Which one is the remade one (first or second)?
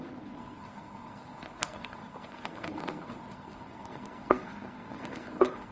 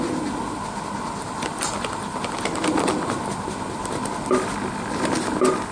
first